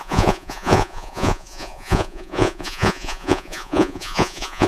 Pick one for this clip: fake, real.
fake